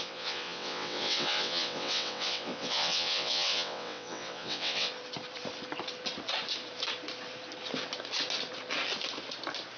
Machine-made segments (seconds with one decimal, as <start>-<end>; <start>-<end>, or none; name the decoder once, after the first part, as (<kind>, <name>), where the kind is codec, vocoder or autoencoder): 0.0-4.9 (vocoder, WaveNeXt)